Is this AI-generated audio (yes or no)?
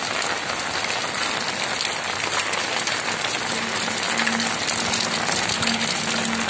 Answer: no